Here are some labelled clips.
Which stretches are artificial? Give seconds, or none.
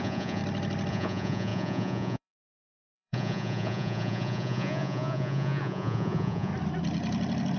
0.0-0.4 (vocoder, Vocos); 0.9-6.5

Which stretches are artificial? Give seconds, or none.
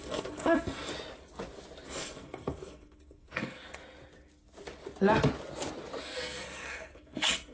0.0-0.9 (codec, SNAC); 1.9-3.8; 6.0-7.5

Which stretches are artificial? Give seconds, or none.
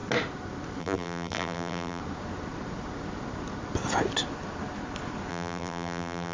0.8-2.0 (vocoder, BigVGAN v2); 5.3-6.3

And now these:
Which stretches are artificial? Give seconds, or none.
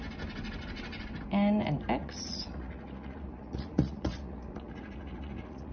2.0-5.7 (vocoder, Vocos)